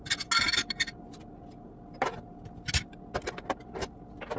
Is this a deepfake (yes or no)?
no